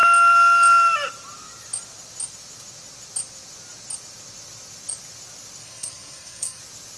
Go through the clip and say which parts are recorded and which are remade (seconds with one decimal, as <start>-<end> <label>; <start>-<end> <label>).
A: 0.0-5.6 recorded; 5.6-6.6 remade; 6.6-7.0 recorded